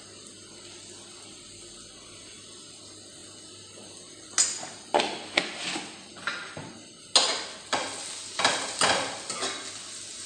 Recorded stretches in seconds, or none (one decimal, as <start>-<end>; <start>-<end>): 0.0-10.3